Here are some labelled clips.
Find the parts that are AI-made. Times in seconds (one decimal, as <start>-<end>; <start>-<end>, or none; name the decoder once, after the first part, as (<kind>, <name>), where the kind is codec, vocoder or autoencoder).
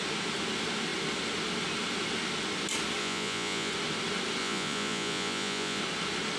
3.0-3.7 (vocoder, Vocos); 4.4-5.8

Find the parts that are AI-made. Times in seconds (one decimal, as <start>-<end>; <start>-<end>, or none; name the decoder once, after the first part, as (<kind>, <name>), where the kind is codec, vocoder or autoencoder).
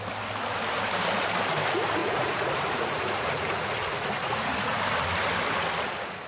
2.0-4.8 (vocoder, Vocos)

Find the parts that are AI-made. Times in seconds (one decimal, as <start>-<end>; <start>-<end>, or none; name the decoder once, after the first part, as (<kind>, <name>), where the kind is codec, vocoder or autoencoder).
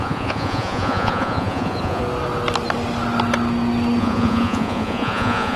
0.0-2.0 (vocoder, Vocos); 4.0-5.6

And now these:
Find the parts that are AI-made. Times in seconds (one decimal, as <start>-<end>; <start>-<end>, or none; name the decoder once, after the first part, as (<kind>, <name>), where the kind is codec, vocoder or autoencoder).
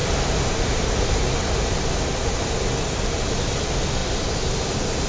none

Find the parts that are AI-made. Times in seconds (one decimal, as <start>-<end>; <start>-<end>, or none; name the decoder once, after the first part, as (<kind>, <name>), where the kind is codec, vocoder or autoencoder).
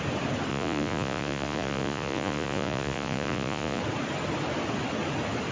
0.5-3.8 (vocoder, Vocos)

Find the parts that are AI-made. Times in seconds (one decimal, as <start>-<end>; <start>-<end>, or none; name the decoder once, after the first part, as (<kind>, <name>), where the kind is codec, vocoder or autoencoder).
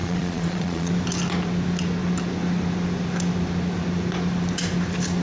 0.0-0.9 (vocoder, Vocos)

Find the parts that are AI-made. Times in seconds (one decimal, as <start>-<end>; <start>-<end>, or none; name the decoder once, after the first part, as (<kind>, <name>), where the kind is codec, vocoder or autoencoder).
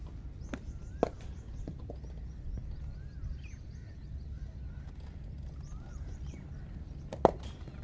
none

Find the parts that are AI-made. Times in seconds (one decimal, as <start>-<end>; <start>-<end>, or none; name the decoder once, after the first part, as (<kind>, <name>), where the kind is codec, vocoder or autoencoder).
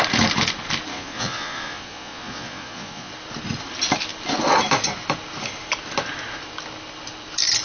0.9-3.1 (vocoder, Vocos)